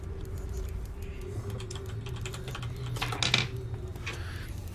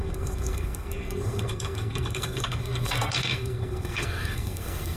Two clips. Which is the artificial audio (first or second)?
second